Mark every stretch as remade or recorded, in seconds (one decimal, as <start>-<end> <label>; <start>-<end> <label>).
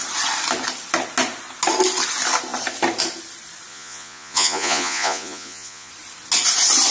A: 0.0-3.7 recorded; 3.7-5.9 remade; 5.9-6.9 recorded